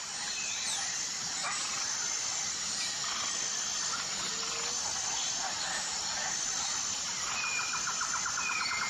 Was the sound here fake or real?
real